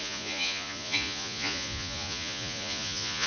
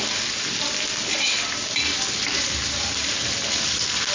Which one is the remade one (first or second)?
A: first